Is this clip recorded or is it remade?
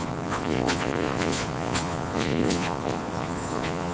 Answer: remade